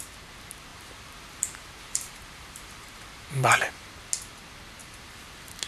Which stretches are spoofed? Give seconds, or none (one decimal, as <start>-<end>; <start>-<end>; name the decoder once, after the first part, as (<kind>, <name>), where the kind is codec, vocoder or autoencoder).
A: 0.7-3.9 (vocoder, BigVGAN v2)